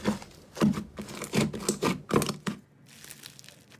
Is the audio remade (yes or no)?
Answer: no